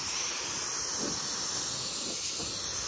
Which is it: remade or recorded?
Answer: recorded